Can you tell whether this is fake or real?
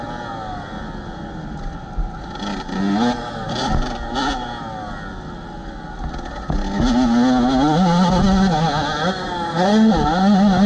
real